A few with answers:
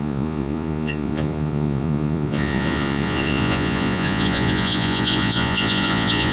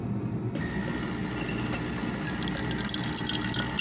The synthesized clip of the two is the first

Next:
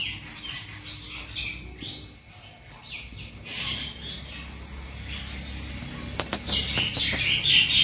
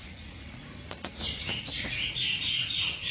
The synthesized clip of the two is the second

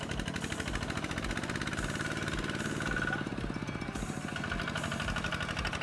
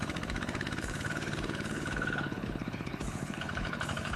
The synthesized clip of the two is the second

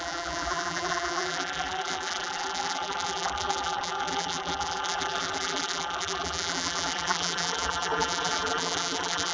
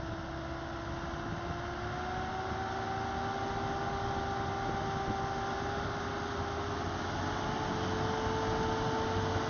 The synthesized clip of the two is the first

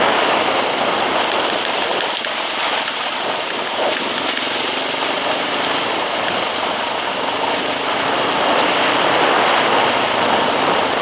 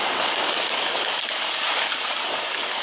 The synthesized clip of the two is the second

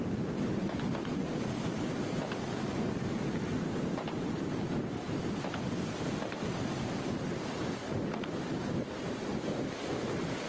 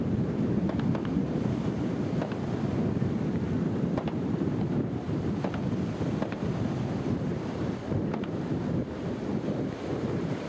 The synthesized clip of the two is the second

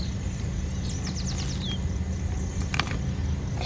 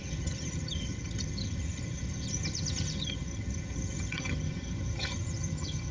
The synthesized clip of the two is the second